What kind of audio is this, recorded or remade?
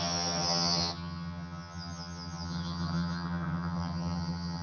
remade